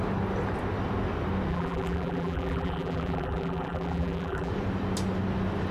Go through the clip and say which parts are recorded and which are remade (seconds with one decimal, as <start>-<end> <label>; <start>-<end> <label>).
0.0-1.5 recorded; 1.5-4.5 remade; 4.5-5.7 recorded